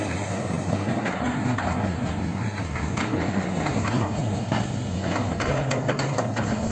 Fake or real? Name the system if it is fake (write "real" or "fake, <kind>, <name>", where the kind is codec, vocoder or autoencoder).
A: fake, codec, SNAC